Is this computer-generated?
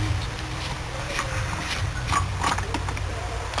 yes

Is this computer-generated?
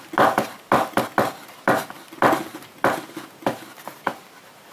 no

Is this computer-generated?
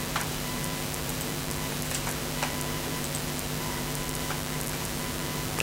yes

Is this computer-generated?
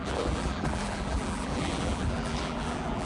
yes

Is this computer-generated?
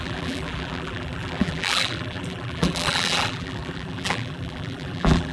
yes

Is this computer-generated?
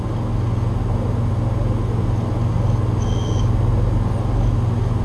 no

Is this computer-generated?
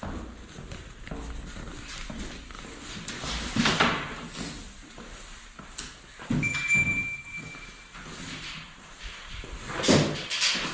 no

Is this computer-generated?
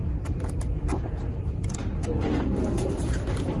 yes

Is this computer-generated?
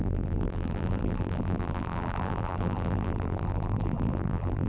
yes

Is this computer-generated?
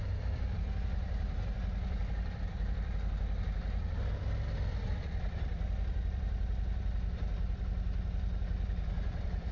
yes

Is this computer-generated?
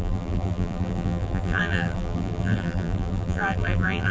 yes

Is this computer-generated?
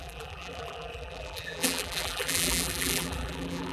yes